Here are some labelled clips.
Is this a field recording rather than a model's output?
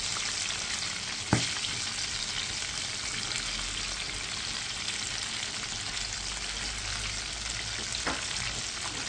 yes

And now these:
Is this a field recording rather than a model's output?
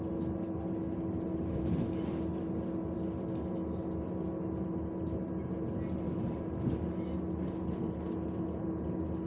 yes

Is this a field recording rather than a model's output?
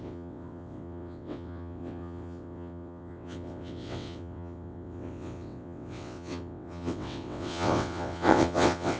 no